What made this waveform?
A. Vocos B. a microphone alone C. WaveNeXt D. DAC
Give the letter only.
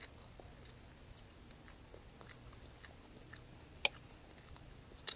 B